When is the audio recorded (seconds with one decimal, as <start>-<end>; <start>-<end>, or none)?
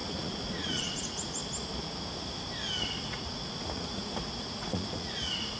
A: 1.4-3.0